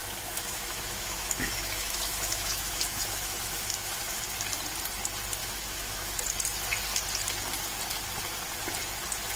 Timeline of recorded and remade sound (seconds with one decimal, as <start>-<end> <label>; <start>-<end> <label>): 0.0-4.0 remade; 4.0-5.4 recorded; 5.4-6.2 remade; 6.2-9.4 recorded